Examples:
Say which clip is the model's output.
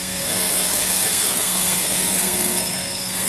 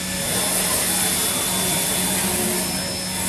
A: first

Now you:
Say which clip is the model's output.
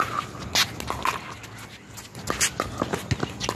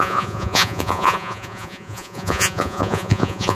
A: second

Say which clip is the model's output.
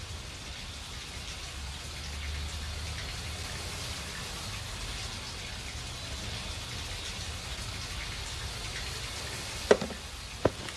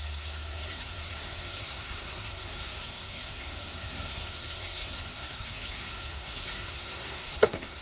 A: second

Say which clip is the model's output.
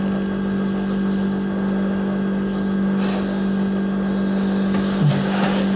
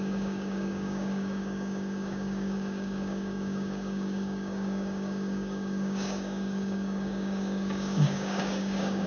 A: second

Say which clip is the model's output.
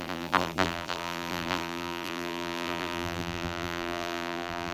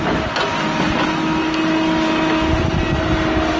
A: first